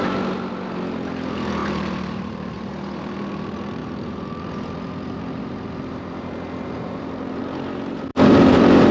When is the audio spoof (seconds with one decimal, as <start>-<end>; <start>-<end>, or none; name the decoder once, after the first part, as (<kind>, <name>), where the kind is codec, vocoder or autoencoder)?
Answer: 1.6-2.7 (vocoder, BigVGAN v2); 3.8-7.4; 8.1-8.9